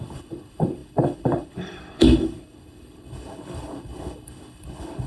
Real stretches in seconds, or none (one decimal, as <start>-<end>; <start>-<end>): none